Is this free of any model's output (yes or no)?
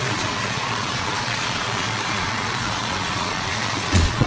no